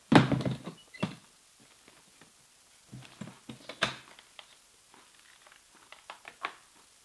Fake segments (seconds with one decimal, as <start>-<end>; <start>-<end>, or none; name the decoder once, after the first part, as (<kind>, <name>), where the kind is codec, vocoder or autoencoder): none